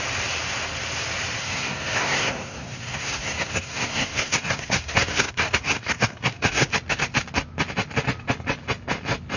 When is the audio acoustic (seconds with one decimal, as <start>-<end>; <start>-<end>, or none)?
0.0-1.4; 6.7-9.4